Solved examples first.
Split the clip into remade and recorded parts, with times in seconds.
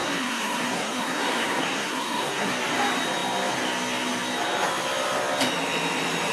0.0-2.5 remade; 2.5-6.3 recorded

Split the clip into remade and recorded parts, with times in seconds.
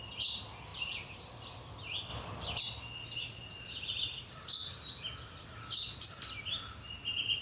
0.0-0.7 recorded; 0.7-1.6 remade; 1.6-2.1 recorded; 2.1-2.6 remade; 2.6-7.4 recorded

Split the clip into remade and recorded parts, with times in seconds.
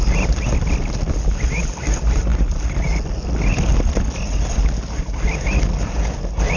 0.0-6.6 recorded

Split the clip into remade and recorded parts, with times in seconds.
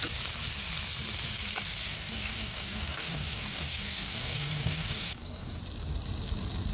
0.0-1.8 recorded; 1.8-5.6 remade; 5.6-6.7 recorded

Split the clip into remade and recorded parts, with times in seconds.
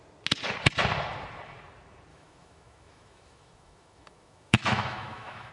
0.0-2.1 recorded; 2.1-5.5 remade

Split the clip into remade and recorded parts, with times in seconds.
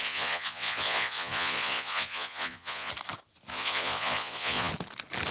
0.0-2.9 remade; 2.9-3.5 recorded; 3.5-4.7 remade; 4.7-5.3 recorded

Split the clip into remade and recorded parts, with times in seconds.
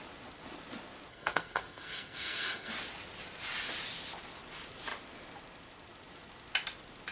0.0-1.1 recorded; 1.1-2.7 remade; 2.7-7.1 recorded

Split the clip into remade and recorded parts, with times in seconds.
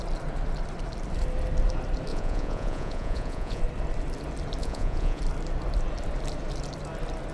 0.0-2.1 recorded; 2.1-3.6 remade; 3.6-4.6 recorded; 4.6-5.2 remade; 5.2-7.3 recorded